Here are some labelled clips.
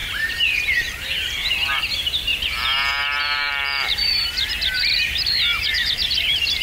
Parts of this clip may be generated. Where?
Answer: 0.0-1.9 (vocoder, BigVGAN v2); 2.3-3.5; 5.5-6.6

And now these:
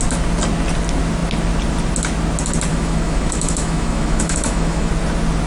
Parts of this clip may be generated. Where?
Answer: 2.7-4.9 (autoencoder, DAC-VAE)